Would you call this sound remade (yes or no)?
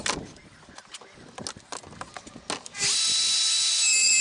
no